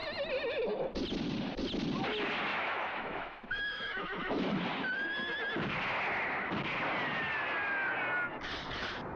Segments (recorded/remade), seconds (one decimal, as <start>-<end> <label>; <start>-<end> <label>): 0.0-2.5 recorded; 2.5-4.6 remade; 4.6-9.2 recorded